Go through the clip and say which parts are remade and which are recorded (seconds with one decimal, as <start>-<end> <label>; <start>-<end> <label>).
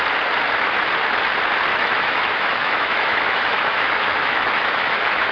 0.0-1.7 recorded; 1.7-5.3 remade